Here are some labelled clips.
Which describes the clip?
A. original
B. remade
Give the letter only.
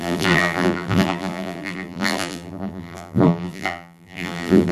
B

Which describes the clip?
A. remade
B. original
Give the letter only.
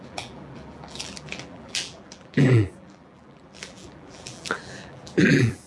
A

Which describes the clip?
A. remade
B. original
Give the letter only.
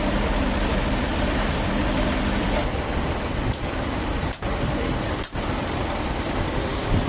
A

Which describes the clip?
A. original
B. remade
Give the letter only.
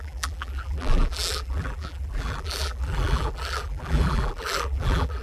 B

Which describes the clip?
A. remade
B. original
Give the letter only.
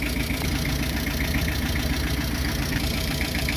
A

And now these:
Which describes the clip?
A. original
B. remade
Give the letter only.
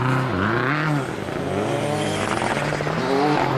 A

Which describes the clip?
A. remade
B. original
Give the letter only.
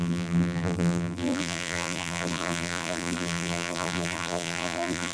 A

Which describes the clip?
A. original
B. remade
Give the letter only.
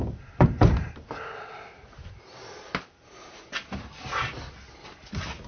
A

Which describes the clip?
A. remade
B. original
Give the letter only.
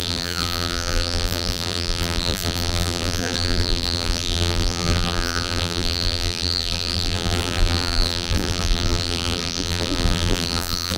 A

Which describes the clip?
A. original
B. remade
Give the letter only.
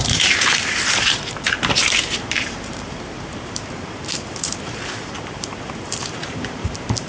B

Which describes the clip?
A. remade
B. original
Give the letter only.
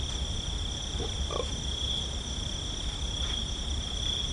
B